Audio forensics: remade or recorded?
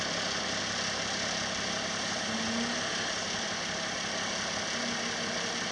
recorded